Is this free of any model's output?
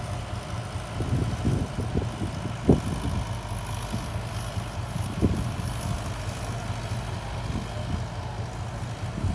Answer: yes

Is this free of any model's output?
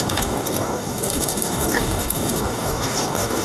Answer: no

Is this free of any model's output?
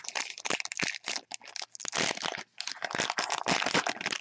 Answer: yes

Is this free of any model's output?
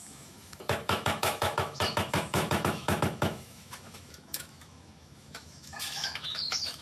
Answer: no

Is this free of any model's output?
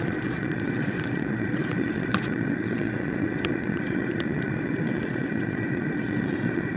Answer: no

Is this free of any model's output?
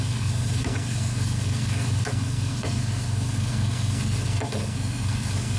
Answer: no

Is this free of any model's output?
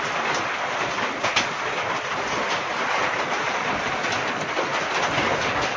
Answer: yes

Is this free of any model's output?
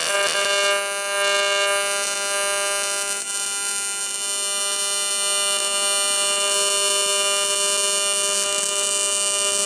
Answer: yes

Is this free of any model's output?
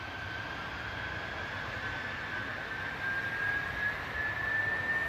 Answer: yes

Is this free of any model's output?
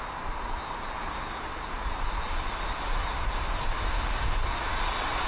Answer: yes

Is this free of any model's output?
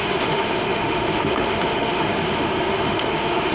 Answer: no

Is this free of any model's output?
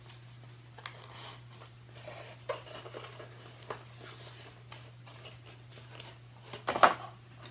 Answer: yes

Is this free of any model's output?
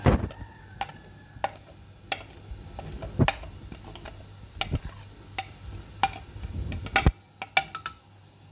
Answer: yes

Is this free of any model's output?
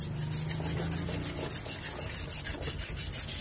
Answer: yes